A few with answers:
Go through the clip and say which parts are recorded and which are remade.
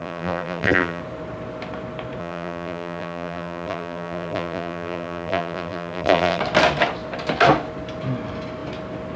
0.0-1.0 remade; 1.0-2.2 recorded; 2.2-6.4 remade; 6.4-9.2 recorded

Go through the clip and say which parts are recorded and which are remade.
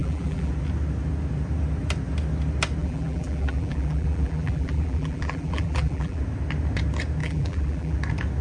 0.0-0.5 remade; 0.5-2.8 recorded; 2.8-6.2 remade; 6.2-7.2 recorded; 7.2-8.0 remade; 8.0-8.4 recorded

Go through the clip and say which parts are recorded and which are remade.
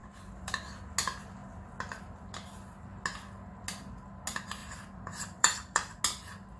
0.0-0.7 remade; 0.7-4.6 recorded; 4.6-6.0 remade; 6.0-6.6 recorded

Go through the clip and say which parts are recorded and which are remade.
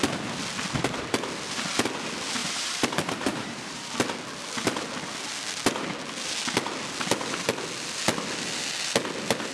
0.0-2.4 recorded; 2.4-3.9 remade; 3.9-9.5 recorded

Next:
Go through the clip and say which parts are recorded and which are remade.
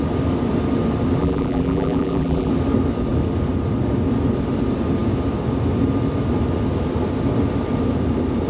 0.0-1.2 recorded; 1.2-2.5 remade; 2.5-8.5 recorded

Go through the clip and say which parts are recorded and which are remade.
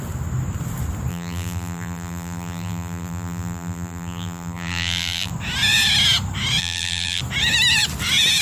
0.0-1.1 recorded; 1.1-5.3 remade; 5.3-6.6 recorded; 6.6-7.2 remade; 7.2-8.4 recorded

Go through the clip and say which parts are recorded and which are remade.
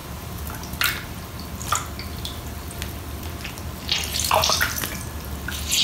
0.0-5.8 recorded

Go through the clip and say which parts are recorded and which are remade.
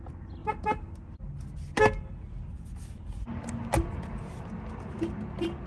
0.0-5.7 recorded